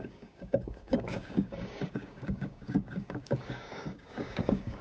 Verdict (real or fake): fake